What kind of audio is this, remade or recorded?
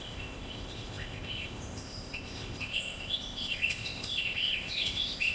remade